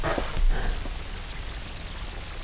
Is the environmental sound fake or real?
real